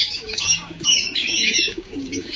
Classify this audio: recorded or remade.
remade